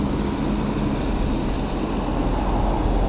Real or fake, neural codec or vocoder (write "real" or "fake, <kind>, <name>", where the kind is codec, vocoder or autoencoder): real